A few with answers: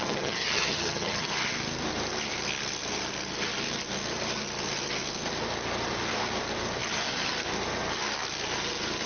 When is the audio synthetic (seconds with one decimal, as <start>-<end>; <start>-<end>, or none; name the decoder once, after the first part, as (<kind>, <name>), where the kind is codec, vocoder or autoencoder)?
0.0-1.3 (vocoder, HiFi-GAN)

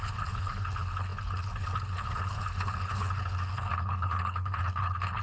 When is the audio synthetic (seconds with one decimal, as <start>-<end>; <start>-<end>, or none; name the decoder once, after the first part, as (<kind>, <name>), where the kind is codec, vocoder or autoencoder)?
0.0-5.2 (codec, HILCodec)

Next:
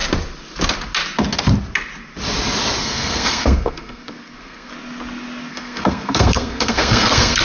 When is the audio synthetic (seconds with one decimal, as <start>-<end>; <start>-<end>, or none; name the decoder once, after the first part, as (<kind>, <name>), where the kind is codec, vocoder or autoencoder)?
2.8-4.7 (codec, SNAC); 5.5-7.4

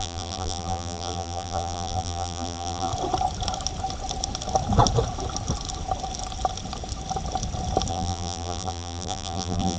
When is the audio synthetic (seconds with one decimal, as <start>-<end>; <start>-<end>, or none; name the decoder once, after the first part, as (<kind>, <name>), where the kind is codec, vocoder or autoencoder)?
0.0-2.9 (vocoder, BigVGAN v2); 7.9-9.8